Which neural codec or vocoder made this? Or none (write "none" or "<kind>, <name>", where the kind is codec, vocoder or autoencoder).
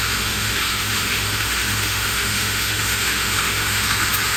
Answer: autoencoder, DAC-VAE